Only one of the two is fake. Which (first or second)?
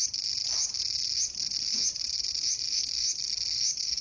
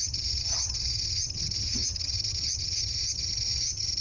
second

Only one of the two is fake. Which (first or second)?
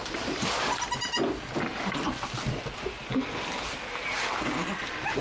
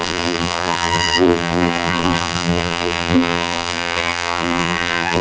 second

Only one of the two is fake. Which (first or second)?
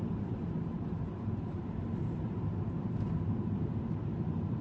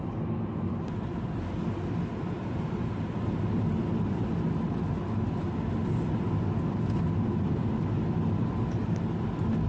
first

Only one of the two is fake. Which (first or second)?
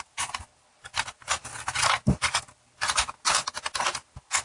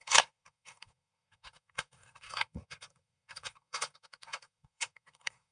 second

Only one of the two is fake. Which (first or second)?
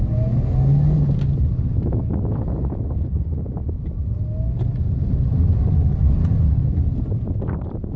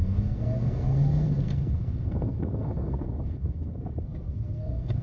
second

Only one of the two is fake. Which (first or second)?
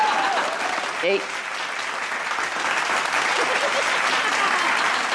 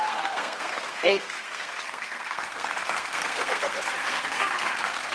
second